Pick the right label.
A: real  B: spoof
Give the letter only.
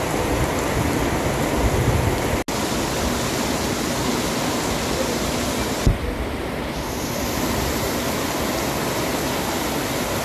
A